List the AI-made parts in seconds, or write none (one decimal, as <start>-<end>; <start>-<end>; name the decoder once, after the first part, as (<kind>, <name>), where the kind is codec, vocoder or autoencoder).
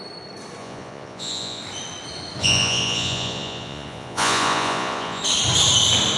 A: 0.6-1.6 (vocoder, Vocos); 2.4-5.2